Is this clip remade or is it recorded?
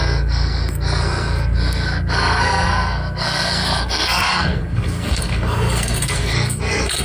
remade